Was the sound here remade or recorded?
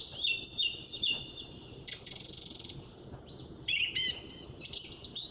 recorded